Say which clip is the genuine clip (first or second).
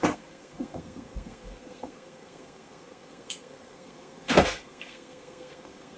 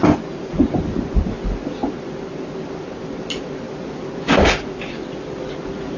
second